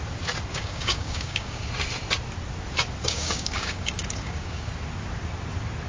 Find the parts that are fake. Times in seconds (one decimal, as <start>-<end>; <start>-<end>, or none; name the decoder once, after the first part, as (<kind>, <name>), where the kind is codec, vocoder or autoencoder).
0.5-1.7 (codec, DAC); 3.0-4.7